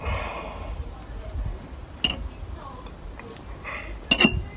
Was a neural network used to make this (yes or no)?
no